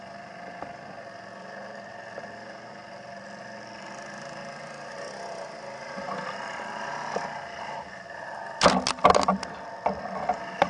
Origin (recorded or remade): recorded